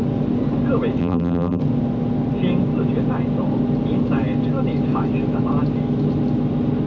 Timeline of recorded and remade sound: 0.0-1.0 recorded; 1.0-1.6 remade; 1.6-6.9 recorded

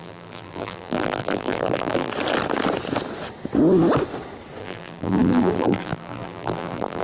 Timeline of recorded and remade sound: 0.0-2.1 remade; 2.1-4.6 recorded; 4.6-7.0 remade

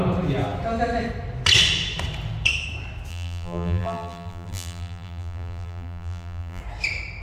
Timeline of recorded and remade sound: 0.0-3.1 recorded; 3.1-6.6 remade; 6.6-7.2 recorded

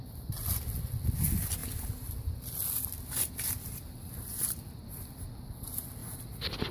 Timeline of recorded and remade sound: 0.0-6.0 recorded; 6.0-6.7 remade

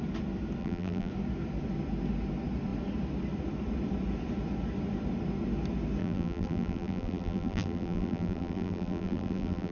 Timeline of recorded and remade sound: 0.0-0.6 recorded; 0.6-1.1 remade; 1.1-6.0 recorded; 6.0-9.7 remade

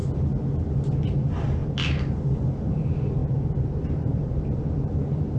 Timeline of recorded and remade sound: 0.0-1.0 recorded; 1.0-1.6 remade; 1.6-2.7 recorded; 2.7-5.4 remade

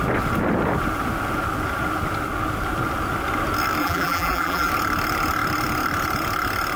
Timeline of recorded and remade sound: 0.0-3.8 recorded; 3.8-4.7 remade; 4.7-6.8 recorded

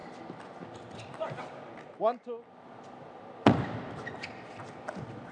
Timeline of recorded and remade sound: 0.0-5.3 recorded